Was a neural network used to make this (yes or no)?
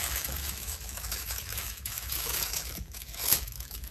yes